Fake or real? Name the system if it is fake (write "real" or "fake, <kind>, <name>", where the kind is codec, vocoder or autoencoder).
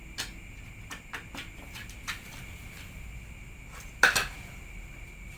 real